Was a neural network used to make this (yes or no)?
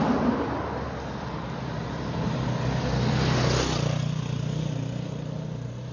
no